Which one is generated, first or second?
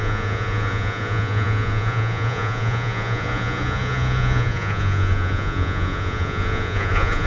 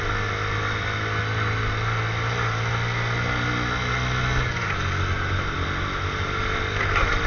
first